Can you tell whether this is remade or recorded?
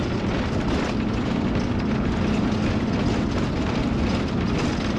recorded